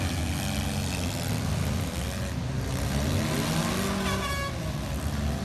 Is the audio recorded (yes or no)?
yes